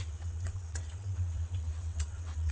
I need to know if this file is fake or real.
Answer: fake